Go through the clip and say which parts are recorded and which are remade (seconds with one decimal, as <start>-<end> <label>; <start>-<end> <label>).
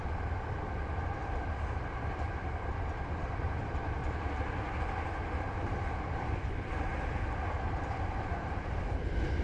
0.0-1.2 remade; 1.2-3.2 recorded; 3.2-4.0 remade; 4.0-4.8 recorded; 4.8-6.9 remade; 6.9-7.7 recorded; 7.7-9.4 remade